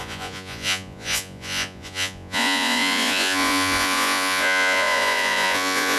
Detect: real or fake fake